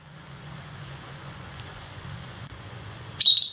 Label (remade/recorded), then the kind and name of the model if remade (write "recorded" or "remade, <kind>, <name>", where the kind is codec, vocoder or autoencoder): remade, vocoder, Vocos